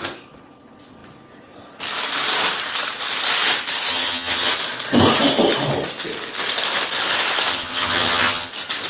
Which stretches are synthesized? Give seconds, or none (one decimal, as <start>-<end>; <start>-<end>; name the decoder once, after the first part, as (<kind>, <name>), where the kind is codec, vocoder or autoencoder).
3.9-4.5 (vocoder, HiFi-GAN); 7.5-8.5